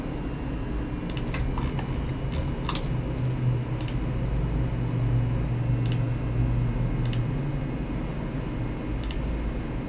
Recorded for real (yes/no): yes